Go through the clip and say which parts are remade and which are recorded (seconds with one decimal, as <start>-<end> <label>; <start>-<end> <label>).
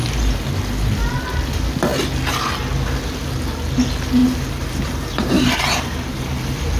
0.0-4.2 recorded; 4.2-6.2 remade; 6.2-6.8 recorded